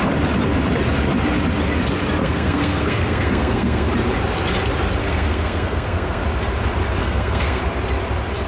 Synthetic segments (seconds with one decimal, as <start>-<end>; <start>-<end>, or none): 2.2-3.9; 5.0-6.2; 7.0-7.6